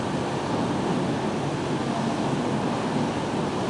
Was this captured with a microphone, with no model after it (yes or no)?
yes